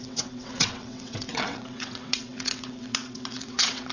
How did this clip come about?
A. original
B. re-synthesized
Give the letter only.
B